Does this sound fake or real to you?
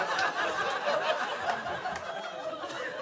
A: real